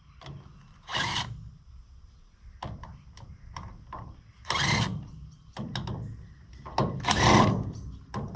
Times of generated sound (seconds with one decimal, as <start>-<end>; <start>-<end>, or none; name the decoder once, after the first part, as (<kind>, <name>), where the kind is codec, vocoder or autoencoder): none